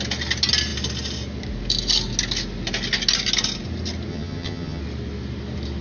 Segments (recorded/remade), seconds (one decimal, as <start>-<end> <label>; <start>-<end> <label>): 0.0-4.1 recorded; 4.1-4.8 remade; 4.8-5.8 recorded